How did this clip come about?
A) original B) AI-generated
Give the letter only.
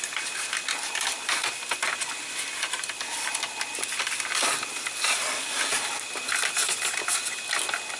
A